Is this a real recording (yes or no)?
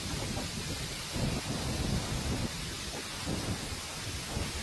yes